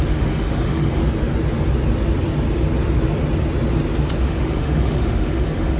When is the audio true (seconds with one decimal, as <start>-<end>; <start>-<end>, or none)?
1.0-4.2